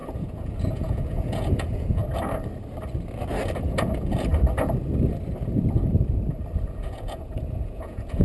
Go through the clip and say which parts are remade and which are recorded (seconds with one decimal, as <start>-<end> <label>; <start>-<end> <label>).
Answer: 0.0-2.0 remade; 2.0-3.6 recorded; 3.6-4.3 remade; 4.3-6.6 recorded; 6.6-8.2 remade